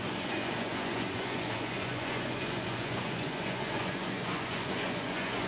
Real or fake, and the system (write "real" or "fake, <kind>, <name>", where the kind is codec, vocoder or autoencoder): fake, vocoder, Vocos